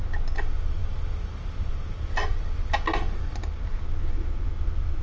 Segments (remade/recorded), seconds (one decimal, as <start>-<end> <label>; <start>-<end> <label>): 0.0-5.0 recorded

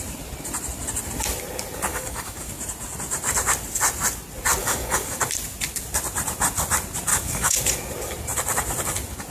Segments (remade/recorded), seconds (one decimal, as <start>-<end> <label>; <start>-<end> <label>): 0.0-1.9 recorded; 1.9-2.5 remade; 2.5-4.6 recorded; 4.6-5.2 remade; 5.2-7.1 recorded; 7.1-7.6 remade; 7.6-9.3 recorded

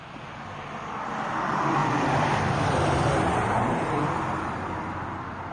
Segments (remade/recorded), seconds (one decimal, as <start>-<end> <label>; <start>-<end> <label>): 0.0-1.8 recorded; 1.8-5.1 remade; 5.1-5.5 recorded

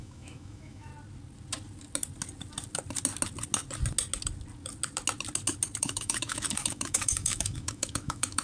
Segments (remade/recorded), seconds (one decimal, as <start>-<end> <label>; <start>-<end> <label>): 0.0-0.9 remade; 0.9-5.8 recorded; 5.8-8.4 remade

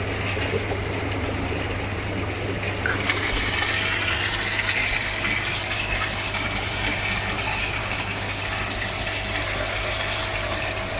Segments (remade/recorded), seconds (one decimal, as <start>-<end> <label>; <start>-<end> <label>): 0.0-7.8 recorded; 7.8-8.4 remade; 8.4-11.0 recorded

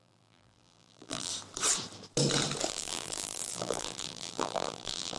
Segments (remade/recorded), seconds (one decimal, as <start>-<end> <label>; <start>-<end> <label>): 0.0-1.3 remade; 1.3-2.7 recorded; 2.7-5.2 remade